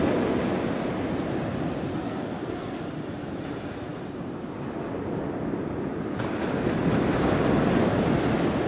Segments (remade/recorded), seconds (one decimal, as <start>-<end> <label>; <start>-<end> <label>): 0.0-1.9 recorded; 1.9-2.8 remade; 2.8-8.7 recorded